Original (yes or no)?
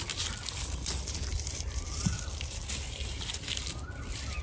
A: yes